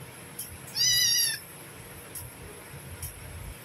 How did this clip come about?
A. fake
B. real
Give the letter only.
B